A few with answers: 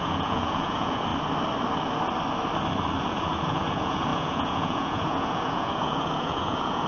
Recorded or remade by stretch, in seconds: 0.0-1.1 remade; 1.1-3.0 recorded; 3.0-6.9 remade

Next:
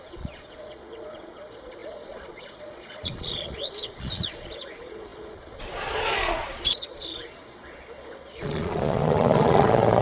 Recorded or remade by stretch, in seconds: 0.0-10.0 remade

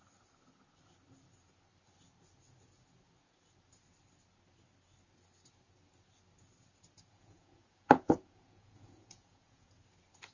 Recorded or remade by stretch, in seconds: 0.0-7.1 recorded; 7.1-9.8 remade; 9.8-10.3 recorded

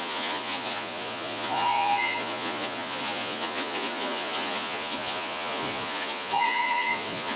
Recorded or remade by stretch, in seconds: 0.0-7.4 remade